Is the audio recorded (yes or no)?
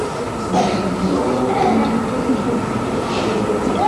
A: yes